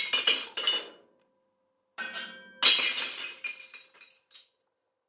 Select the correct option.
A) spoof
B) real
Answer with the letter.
B